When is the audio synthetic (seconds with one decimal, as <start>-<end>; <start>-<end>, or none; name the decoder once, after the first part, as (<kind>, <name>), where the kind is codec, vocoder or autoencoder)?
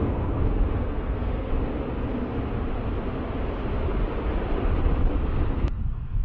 0.0-1.5 (codec, SNAC); 5.2-6.2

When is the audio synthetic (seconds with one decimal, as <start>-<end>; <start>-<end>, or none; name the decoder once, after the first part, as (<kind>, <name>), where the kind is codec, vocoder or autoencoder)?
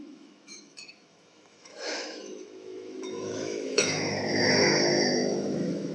0.0-5.9 (autoencoder, DAC-VAE)